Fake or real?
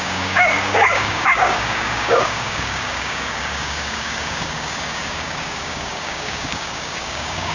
fake